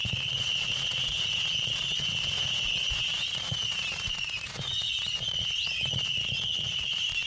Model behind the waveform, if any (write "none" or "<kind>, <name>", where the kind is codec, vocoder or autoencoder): vocoder, Vocos